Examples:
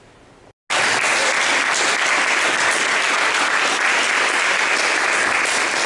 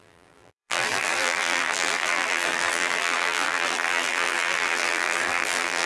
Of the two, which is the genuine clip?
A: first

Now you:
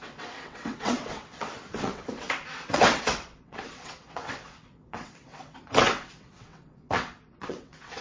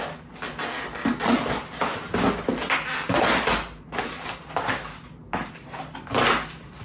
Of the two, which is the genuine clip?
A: second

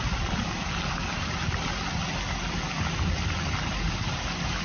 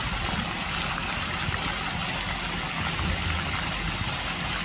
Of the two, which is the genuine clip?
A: second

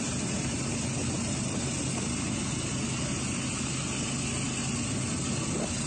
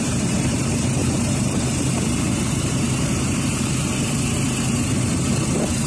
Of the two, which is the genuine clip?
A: first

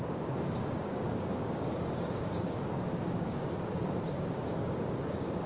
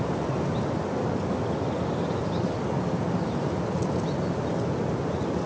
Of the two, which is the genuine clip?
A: second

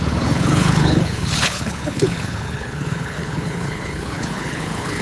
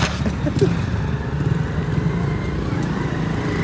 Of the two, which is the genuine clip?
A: second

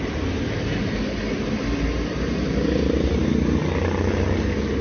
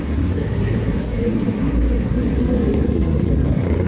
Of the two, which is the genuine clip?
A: first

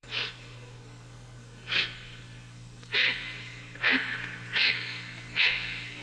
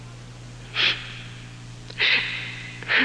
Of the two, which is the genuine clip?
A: second